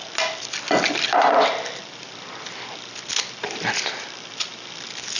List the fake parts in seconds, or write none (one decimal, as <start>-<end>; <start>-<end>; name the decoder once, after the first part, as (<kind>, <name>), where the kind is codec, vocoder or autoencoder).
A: none